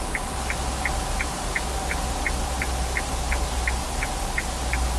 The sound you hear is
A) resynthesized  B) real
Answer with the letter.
B